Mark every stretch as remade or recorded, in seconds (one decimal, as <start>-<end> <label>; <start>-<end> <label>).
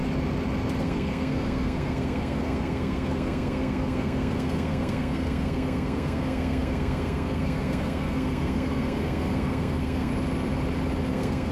0.0-0.8 recorded; 0.8-10.1 remade; 10.1-11.1 recorded; 11.1-11.5 remade